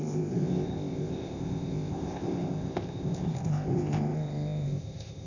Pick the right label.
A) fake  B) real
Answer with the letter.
A